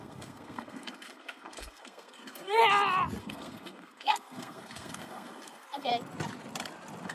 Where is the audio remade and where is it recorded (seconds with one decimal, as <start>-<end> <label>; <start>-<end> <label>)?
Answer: 0.0-2.6 remade; 2.6-3.2 recorded; 3.2-5.9 remade; 5.9-7.1 recorded